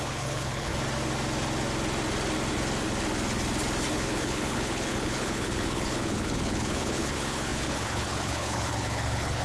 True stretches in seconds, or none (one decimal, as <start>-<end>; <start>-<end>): 0.7-3.9